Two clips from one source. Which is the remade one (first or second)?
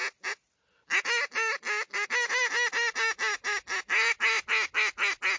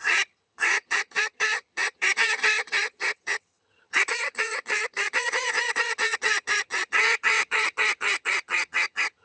second